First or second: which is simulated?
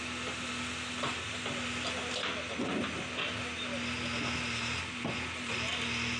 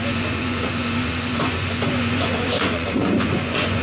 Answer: second